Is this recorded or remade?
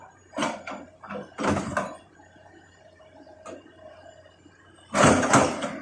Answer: remade